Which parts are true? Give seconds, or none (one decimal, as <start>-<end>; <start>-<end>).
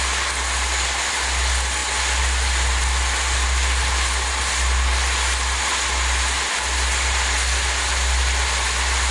0.0-9.1